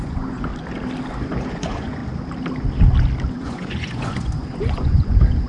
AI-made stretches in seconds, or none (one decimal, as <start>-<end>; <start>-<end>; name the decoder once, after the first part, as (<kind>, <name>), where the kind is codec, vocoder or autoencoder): 0.0-0.5 (vocoder, Vocos); 1.5-2.0; 3.3-5.5